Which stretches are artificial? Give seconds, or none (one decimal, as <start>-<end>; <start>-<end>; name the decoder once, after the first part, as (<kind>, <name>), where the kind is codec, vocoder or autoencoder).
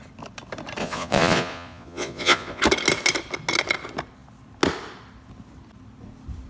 0.8-2.6 (vocoder, Vocos)